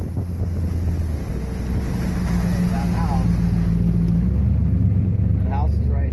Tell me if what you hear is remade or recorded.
recorded